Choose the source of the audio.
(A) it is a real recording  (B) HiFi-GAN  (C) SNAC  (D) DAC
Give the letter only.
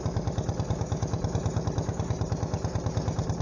A